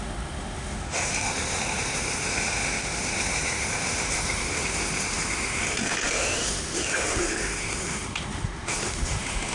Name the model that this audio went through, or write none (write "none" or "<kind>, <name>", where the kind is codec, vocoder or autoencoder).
autoencoder, DAC-VAE